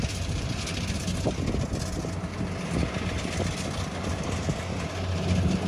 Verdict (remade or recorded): recorded